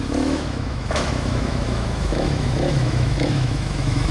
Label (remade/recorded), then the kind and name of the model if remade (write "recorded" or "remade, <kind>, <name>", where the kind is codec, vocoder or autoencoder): remade, autoencoder, DAC-VAE